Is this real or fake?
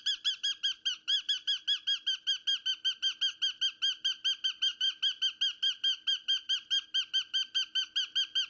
real